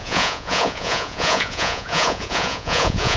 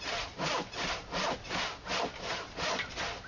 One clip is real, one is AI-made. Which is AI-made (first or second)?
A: first